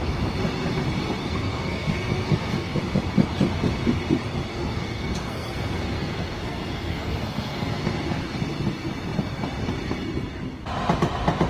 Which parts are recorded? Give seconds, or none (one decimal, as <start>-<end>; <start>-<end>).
0.0-1.2; 2.8-4.5; 8.2-11.5